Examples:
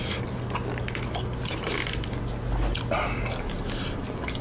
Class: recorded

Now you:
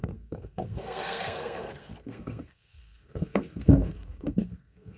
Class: remade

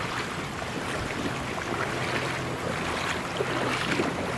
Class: recorded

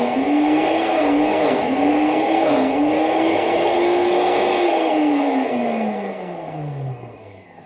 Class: remade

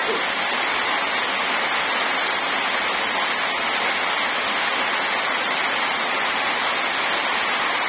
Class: recorded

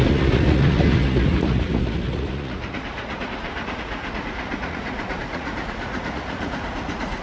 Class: remade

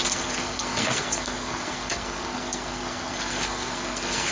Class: remade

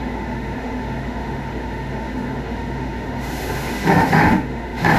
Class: remade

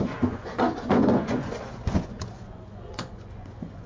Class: remade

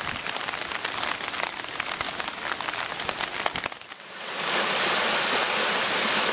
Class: recorded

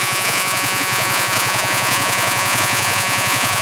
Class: remade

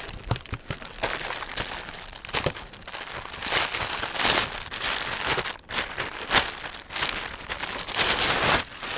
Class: recorded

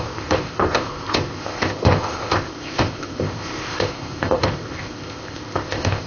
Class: remade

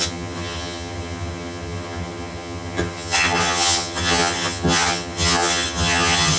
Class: remade